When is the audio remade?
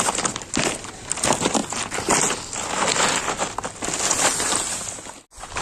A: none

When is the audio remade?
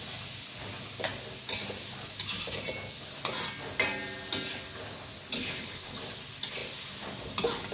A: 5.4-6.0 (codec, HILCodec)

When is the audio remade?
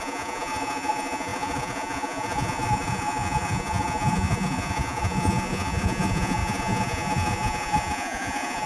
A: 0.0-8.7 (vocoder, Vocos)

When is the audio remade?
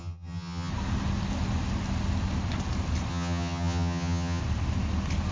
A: 0.0-0.7 (vocoder, HiFi-GAN); 3.1-4.4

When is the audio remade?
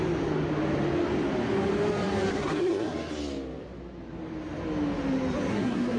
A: 2.3-3.1 (codec, SNAC); 5.5-6.0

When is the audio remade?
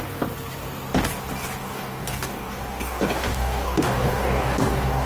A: 1.6-5.1 (codec, DAC)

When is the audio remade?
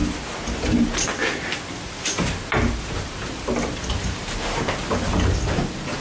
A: none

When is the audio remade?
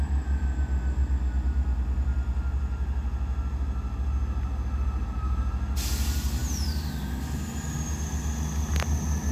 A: none